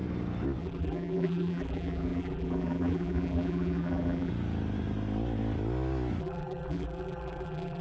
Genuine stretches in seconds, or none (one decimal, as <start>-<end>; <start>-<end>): 0.0-0.6; 4.3-6.2